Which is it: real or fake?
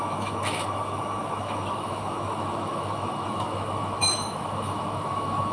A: fake